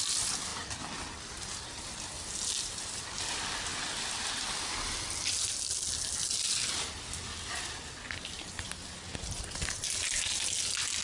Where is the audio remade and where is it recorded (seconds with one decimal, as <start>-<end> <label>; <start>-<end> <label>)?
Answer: 0.0-11.0 recorded